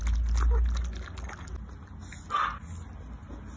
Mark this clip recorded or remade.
recorded